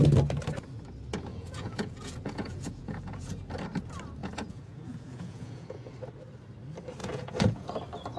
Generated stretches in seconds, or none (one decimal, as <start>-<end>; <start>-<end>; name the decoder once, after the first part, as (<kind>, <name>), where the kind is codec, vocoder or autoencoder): 1.3-3.4 (vocoder, Vocos); 4.2-5.9; 7.0-7.7

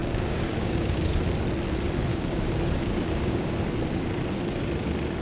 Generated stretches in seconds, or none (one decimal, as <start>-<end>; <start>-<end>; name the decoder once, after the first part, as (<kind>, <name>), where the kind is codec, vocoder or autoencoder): 0.0-1.2 (codec, DAC); 2.1-3.5

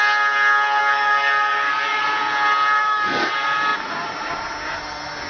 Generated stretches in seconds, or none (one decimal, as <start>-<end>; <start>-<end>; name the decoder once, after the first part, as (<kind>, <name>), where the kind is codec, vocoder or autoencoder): 0.8-2.0 (codec, DAC); 2.8-3.3

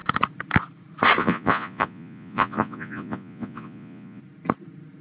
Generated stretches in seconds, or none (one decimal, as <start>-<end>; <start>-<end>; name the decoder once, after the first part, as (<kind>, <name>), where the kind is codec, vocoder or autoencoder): 1.2-4.2 (vocoder, Vocos)